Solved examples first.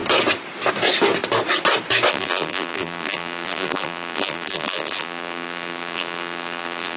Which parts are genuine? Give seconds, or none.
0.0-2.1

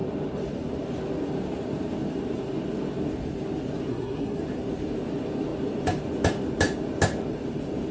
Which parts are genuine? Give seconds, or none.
0.0-3.9; 4.4-7.9